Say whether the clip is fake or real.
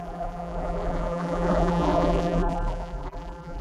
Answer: fake